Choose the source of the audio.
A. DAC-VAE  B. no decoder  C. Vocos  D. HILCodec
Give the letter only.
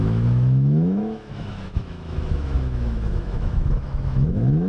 A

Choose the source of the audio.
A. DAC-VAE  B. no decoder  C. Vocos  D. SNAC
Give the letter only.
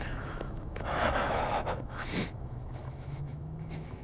A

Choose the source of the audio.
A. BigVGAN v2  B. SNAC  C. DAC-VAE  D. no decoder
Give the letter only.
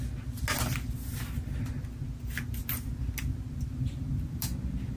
D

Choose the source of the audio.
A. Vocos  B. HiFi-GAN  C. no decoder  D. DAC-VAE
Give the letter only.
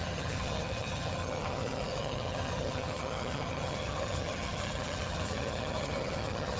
B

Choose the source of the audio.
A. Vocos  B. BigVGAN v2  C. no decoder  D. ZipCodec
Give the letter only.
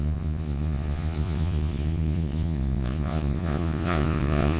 A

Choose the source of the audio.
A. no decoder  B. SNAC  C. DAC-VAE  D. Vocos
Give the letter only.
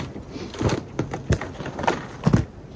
A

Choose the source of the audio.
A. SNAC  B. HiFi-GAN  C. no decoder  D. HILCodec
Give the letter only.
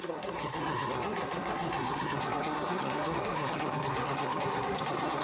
A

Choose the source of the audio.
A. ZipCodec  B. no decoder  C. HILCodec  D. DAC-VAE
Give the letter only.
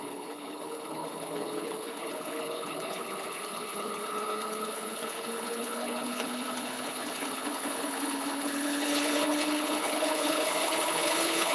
C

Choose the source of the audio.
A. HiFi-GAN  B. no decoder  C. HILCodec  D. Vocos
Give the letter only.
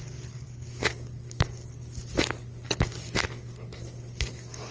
B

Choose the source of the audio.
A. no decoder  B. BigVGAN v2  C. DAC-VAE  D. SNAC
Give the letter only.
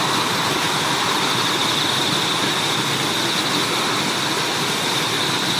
A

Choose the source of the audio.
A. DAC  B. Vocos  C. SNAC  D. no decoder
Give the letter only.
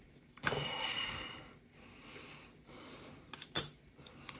D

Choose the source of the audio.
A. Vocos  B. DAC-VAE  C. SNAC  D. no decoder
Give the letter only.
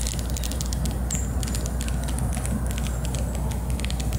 D